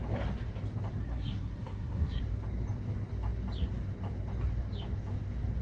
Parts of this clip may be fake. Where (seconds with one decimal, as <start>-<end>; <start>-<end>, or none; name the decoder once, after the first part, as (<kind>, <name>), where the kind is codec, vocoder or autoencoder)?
1.0-2.2 (codec, SNAC)